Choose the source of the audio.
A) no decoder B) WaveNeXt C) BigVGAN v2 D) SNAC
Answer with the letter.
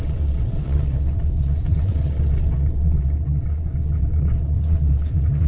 B